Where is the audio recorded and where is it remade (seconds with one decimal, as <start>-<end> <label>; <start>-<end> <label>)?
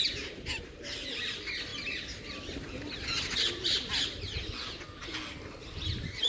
0.0-6.3 recorded